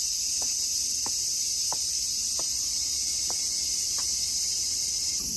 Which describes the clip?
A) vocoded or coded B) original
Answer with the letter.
A